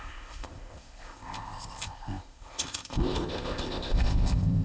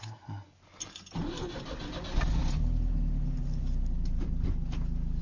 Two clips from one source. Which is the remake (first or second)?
first